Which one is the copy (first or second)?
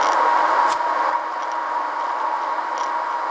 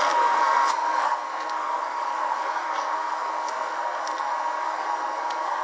second